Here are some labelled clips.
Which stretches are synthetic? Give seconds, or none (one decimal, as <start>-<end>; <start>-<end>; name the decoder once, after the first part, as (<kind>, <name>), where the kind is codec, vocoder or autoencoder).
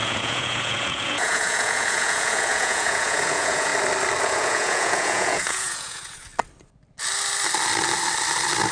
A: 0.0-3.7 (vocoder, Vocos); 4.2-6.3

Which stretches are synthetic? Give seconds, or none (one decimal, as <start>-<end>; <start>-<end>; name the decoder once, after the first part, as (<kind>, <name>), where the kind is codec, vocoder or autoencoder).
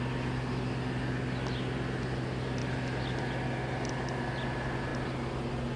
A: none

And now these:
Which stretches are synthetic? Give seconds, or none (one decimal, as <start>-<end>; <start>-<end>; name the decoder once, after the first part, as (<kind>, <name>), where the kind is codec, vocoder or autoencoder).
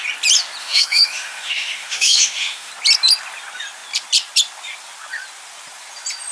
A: 0.6-2.7 (autoencoder, DAC-VAE)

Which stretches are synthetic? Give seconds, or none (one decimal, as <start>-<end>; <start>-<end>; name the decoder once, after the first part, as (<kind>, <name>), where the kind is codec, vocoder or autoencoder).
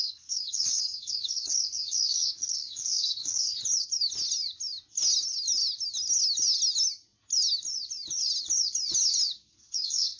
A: 0.0-3.6 (codec, SNAC); 9.5-10.2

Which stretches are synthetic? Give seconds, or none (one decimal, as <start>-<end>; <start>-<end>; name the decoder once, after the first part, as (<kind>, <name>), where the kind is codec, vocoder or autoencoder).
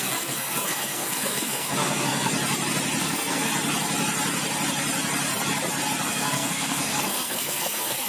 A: 0.0-2.3 (codec, SNAC); 3.0-3.5; 6.1-8.1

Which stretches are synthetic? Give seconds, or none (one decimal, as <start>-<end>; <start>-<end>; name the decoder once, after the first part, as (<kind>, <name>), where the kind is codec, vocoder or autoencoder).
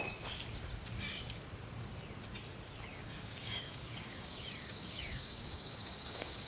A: 2.9-6.5 (codec, DAC)